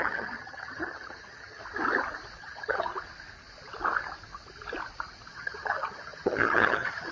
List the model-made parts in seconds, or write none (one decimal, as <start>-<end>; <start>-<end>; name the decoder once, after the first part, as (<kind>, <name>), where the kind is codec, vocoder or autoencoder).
0.0-1.6 (vocoder, HiFi-GAN); 2.4-2.9; 5.3-7.1